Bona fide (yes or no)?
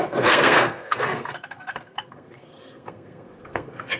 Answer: no